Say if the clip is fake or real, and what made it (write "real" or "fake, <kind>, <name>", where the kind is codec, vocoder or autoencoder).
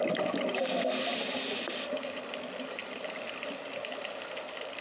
real